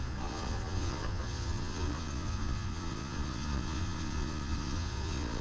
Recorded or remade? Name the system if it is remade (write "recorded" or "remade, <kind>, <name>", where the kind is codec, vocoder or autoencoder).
remade, vocoder, Vocos